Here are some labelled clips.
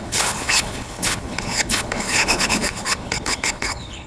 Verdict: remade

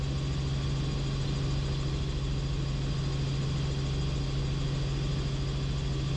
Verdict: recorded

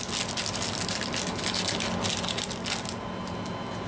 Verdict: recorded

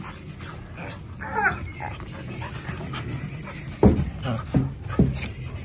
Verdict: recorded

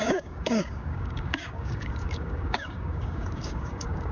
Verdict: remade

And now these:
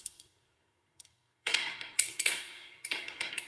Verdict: remade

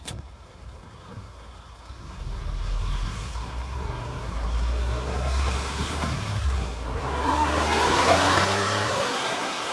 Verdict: remade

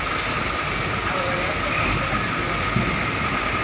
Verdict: recorded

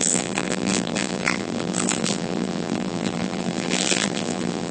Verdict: remade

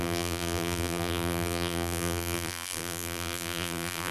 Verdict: remade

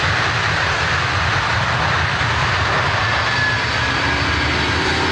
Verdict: recorded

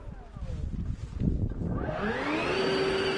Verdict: recorded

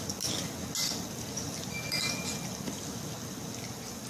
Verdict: recorded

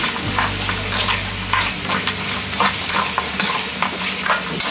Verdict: recorded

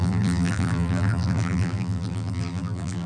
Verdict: remade